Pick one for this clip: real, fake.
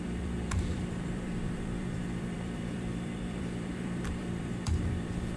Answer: fake